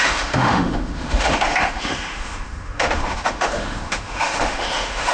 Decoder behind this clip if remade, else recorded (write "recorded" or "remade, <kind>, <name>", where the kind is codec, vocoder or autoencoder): remade, autoencoder, DAC-VAE